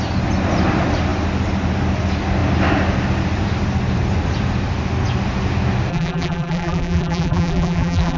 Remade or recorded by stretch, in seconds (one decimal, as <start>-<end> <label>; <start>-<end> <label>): 0.0-5.9 recorded; 5.9-8.2 remade